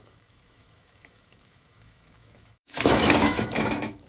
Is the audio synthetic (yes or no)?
yes